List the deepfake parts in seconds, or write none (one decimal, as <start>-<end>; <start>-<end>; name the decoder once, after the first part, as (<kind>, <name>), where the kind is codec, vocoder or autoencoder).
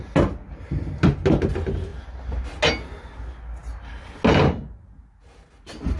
none